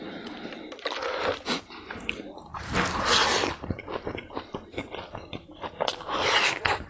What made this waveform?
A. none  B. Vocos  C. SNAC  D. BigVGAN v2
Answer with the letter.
D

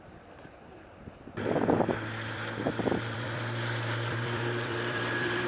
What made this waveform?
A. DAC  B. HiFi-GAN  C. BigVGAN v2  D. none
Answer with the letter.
C